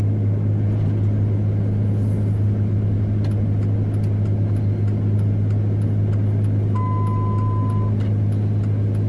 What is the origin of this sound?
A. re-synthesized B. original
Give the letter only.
B